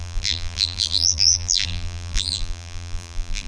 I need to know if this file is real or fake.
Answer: fake